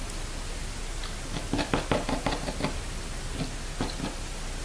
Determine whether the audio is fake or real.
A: real